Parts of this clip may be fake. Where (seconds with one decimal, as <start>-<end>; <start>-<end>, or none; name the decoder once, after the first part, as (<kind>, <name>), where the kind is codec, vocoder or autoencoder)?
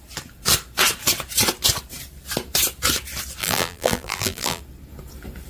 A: 3.4-4.6 (vocoder, BigVGAN v2)